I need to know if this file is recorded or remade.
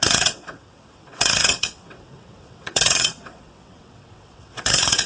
remade